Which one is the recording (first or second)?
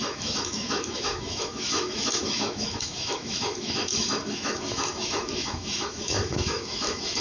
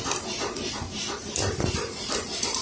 second